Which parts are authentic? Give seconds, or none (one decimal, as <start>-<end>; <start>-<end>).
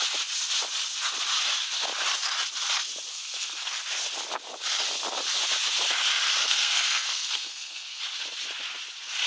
0.0-3.1; 3.8-6.4; 8.0-9.3